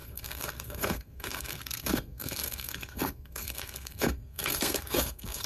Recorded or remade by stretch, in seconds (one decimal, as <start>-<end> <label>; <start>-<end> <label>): 0.0-5.5 remade

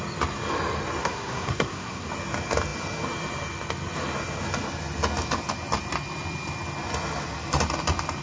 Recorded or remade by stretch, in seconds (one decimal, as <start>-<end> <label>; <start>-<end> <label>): 0.0-1.0 recorded; 1.0-2.1 remade; 2.1-8.2 recorded